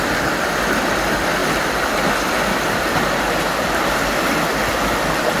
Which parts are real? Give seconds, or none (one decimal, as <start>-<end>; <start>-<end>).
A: 0.0-5.4